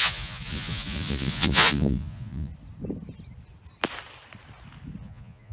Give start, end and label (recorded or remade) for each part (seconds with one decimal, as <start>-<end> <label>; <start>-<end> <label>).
0.0-2.5 remade; 2.5-5.0 recorded; 5.0-5.5 remade